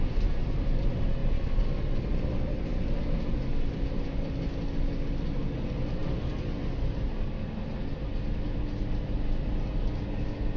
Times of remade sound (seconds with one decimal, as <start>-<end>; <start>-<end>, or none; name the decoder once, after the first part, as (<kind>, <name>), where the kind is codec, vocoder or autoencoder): none